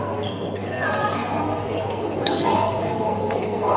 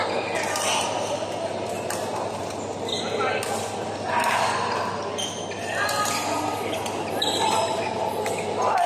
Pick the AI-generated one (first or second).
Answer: first